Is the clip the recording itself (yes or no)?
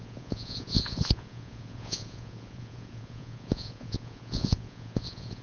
no